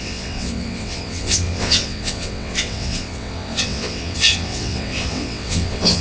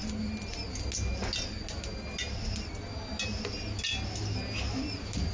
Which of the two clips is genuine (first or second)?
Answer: second